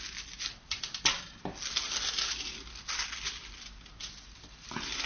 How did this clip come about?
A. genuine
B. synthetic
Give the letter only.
A